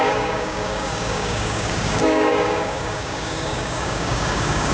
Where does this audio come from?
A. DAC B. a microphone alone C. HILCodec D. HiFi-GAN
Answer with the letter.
A